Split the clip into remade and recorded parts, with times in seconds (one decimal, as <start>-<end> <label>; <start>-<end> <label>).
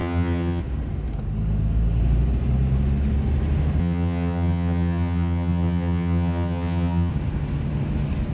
0.0-0.6 remade; 0.6-3.8 recorded; 3.8-7.1 remade; 7.1-8.3 recorded